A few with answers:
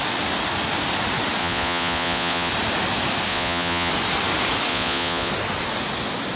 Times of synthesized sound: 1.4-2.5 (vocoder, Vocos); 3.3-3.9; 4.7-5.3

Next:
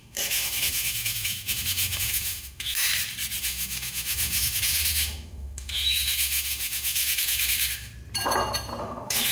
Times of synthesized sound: 0.0-2.9 (autoencoder, DAC-VAE); 3.4-7.9; 8.8-9.3

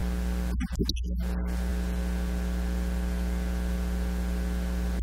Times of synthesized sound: none

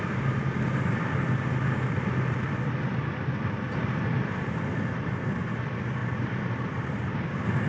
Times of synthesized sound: 6.0-7.2 (vocoder, BigVGAN v2)

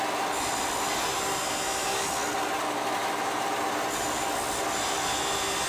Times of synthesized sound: none

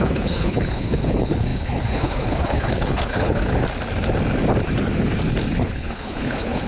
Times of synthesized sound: 0.0-3.5 (codec, HILCodec); 5.6-6.7

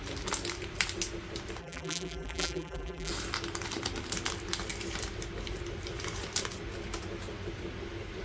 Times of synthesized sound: 1.6-3.1 (vocoder, BigVGAN v2)